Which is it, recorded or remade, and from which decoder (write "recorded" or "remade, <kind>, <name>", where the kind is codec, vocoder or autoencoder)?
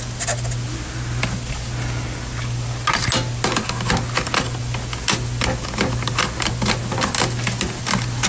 recorded